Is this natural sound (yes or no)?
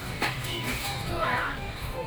no